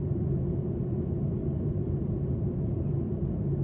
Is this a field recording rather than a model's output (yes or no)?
yes